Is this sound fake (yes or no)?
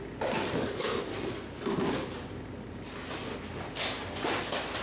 no